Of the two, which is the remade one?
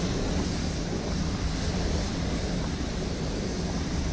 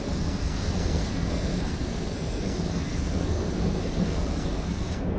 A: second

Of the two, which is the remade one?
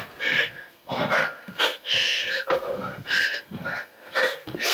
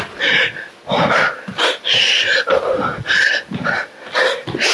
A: first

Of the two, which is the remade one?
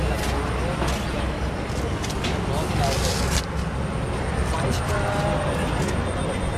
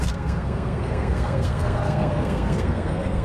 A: second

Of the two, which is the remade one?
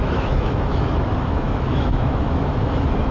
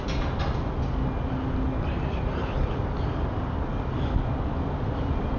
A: first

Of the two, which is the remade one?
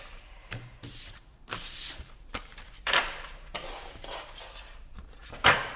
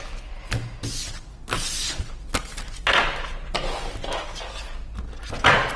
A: first